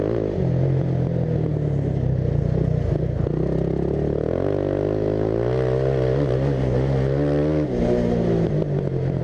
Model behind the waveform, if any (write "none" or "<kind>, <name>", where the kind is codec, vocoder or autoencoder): none